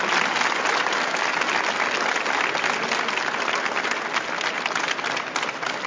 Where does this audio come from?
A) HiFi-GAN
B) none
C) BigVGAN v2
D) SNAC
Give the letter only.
B